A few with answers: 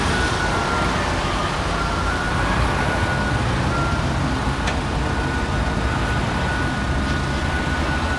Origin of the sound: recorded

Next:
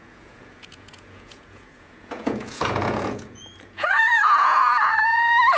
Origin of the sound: remade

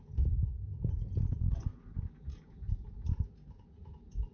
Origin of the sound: remade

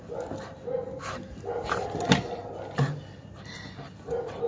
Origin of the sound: recorded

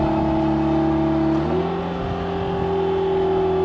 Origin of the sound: recorded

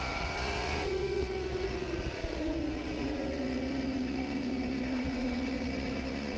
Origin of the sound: remade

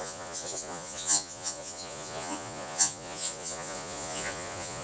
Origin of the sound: remade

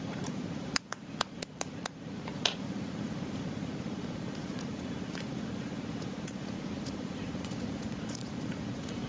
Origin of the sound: remade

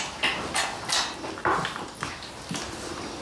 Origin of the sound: recorded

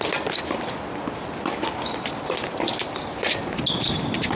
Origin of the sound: recorded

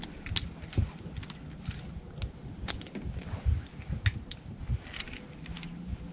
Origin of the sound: recorded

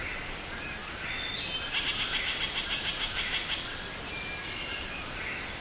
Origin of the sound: recorded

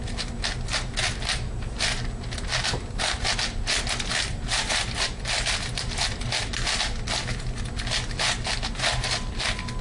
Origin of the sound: recorded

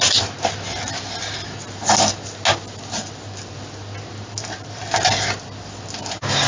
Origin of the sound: recorded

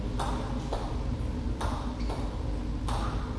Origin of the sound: recorded